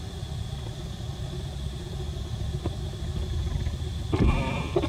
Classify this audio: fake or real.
real